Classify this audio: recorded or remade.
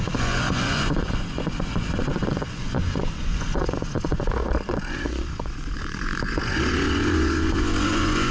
remade